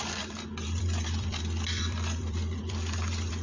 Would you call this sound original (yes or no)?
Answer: no